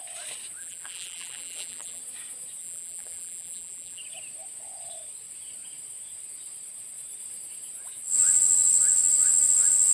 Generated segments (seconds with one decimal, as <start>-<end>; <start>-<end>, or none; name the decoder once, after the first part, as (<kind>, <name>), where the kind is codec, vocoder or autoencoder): 0.6-2.0 (vocoder, BigVGAN v2); 2.6-4.0